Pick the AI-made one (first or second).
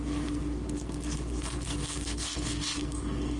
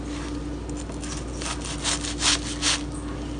first